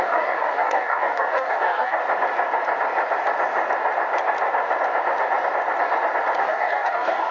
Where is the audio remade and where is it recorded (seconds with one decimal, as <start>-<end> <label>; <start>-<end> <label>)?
0.0-2.0 remade; 2.0-6.4 recorded; 6.4-7.3 remade